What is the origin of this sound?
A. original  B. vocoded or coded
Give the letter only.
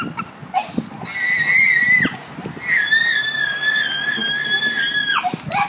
A